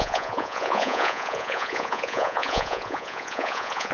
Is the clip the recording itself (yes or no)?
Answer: no